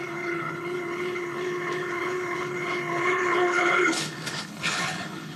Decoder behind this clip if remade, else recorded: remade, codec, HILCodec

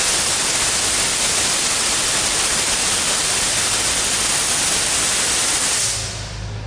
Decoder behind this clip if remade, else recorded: recorded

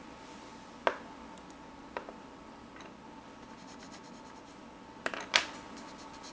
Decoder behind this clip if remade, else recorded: recorded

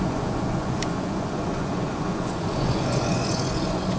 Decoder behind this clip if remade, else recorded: remade, vocoder, Vocos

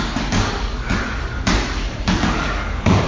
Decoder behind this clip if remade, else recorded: remade, codec, DAC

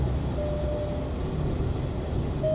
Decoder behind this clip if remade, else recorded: recorded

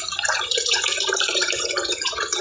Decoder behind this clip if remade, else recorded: remade, vocoder, Vocos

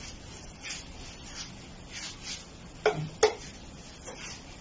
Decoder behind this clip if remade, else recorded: recorded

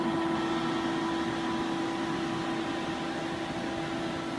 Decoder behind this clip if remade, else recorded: recorded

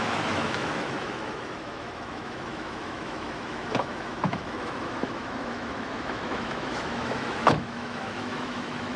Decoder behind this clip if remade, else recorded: remade, autoencoder, DAC-VAE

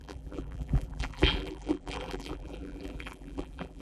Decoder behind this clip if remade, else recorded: remade, vocoder, BigVGAN v2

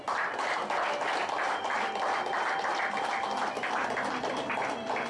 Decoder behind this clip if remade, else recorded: recorded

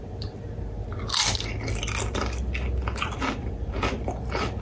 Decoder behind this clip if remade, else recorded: recorded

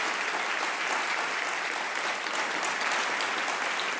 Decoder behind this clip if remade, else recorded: recorded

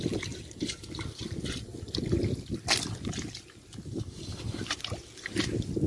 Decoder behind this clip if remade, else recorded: recorded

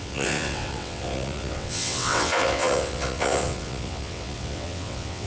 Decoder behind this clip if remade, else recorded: remade, vocoder, WaveNeXt